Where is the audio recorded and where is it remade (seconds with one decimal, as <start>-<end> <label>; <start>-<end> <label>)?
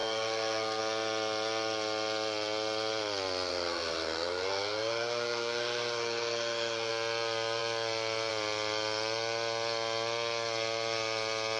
0.0-0.8 remade; 0.8-3.5 recorded; 3.5-6.9 remade; 6.9-11.6 recorded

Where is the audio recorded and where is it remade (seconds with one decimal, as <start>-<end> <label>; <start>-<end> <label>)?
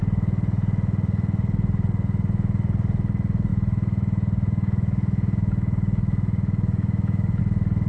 0.0-3.5 recorded; 3.5-7.4 remade; 7.4-7.9 recorded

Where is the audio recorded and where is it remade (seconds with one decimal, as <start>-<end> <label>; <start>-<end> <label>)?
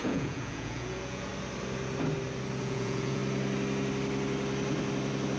0.0-1.3 remade; 1.3-2.6 recorded; 2.6-3.2 remade; 3.2-5.4 recorded